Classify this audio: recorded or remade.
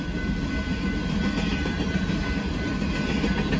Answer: recorded